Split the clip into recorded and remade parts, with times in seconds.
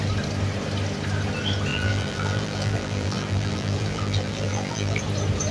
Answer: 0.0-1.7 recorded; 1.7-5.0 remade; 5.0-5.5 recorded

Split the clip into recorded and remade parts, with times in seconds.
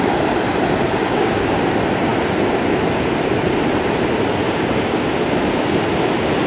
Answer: 0.0-1.0 recorded; 1.0-1.6 remade; 1.6-6.5 recorded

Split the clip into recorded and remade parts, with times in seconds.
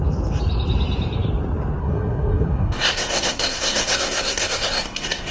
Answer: 0.0-1.8 recorded; 1.8-5.3 remade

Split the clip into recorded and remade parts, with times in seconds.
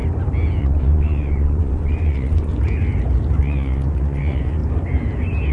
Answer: 0.0-0.6 recorded; 0.6-2.5 remade; 2.5-3.4 recorded; 3.4-4.6 remade; 4.6-5.5 recorded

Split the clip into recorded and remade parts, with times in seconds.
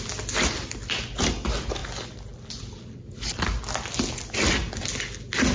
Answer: 0.0-5.5 recorded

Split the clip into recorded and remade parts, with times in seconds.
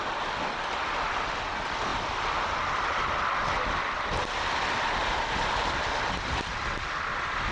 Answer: 0.0-1.9 recorded; 1.9-3.0 remade; 3.0-5.0 recorded; 5.0-7.5 remade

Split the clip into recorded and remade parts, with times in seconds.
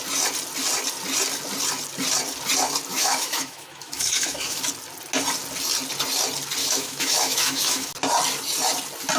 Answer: 0.0-2.9 recorded; 2.9-4.6 remade; 4.6-6.6 recorded; 6.6-7.9 remade; 7.9-9.2 recorded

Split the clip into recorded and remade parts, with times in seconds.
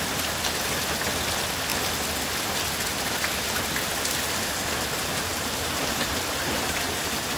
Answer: 0.0-5.3 recorded; 5.3-6.9 remade; 6.9-7.4 recorded